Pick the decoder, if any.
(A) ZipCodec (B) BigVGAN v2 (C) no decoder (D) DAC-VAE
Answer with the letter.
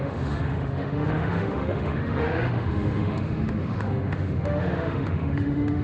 D